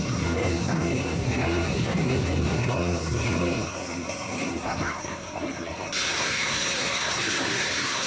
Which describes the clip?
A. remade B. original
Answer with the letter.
A